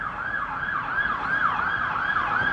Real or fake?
real